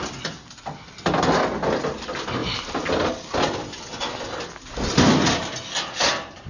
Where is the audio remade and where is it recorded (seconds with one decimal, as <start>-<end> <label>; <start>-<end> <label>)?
0.0-6.5 recorded